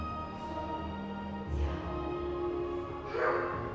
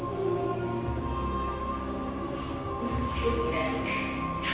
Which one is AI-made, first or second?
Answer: second